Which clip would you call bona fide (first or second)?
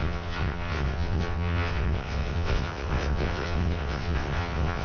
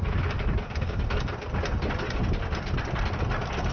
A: second